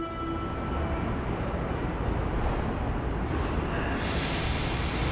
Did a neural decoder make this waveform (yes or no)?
no